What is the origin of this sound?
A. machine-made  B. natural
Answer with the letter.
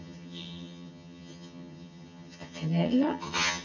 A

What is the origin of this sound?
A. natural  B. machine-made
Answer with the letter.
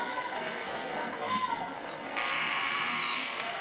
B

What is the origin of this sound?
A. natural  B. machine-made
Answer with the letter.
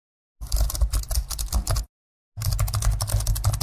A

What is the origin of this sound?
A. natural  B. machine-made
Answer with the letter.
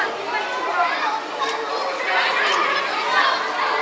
A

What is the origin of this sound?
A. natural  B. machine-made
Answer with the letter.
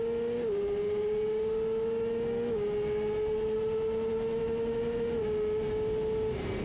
A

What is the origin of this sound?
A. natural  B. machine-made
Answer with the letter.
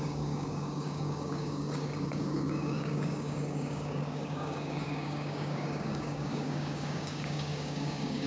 B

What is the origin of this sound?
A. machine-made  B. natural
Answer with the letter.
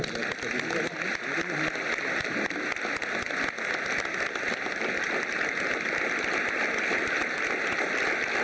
B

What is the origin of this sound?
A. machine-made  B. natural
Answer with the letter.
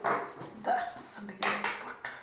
B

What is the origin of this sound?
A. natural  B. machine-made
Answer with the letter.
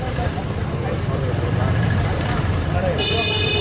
B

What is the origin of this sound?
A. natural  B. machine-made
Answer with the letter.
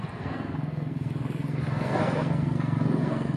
B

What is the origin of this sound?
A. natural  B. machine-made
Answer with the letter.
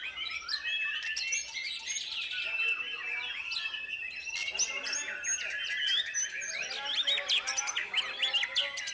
A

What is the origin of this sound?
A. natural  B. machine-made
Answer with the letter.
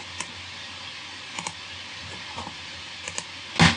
A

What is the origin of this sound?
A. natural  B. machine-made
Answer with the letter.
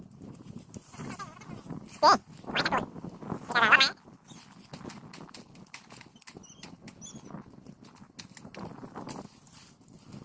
A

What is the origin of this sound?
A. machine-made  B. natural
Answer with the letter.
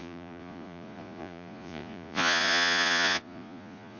A